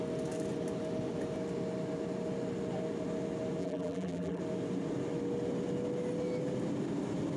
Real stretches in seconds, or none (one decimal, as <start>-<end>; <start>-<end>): 0.0-3.6; 4.4-7.4